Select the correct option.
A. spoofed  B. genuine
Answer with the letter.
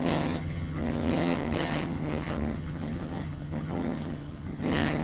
A